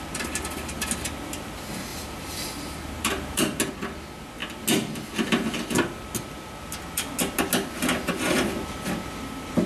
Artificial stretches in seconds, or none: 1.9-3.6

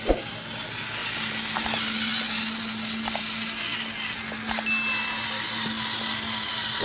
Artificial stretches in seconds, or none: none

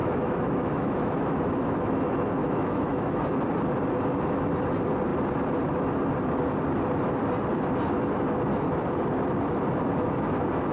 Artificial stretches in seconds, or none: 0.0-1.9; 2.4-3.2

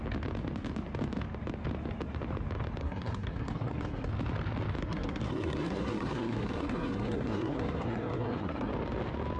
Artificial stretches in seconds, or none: 2.8-4.1; 4.8-8.7